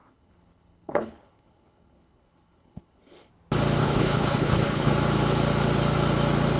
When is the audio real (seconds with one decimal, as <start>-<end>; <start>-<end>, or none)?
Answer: 3.3-3.8; 4.9-6.6